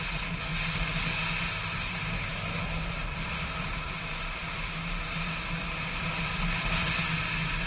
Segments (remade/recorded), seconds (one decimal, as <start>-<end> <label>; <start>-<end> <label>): 0.0-7.7 recorded